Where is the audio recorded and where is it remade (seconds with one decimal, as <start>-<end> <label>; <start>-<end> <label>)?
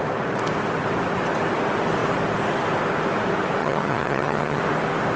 0.0-3.6 recorded; 3.6-4.6 remade; 4.6-5.2 recorded